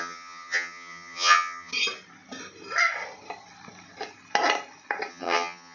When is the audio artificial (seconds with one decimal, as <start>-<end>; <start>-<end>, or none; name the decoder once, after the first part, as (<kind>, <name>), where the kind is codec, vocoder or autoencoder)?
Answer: 0.0-1.7 (vocoder, HiFi-GAN); 5.1-5.7